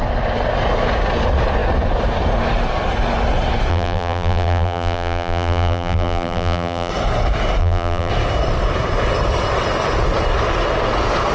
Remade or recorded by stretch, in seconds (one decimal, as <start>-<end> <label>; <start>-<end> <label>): 0.0-3.7 recorded; 3.7-6.9 remade; 6.9-7.6 recorded; 7.6-8.1 remade; 8.1-11.3 recorded